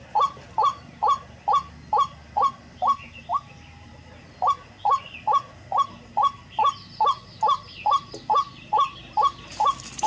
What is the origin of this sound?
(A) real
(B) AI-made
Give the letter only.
A